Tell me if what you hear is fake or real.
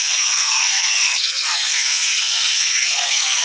fake